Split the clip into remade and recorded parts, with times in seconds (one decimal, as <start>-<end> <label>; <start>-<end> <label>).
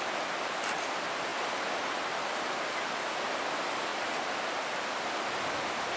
0.0-6.0 recorded